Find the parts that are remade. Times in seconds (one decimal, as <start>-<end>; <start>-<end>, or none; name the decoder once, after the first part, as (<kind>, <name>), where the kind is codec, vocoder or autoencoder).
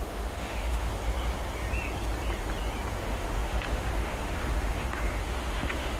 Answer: 0.0-0.9 (autoencoder, DAC-VAE); 2.9-6.0